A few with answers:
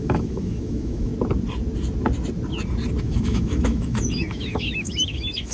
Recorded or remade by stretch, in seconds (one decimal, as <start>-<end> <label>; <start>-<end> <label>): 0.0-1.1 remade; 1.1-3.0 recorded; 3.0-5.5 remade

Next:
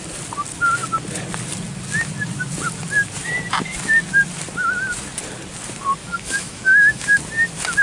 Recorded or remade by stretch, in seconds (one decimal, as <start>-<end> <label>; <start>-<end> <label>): 0.0-6.0 recorded; 6.0-7.2 remade; 7.2-7.8 recorded

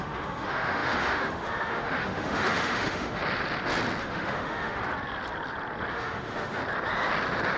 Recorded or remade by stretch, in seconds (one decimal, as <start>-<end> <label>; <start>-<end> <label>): 0.0-3.2 remade; 3.2-4.0 recorded; 4.0-4.8 remade; 4.8-5.9 recorded; 5.9-6.6 remade; 6.6-7.6 recorded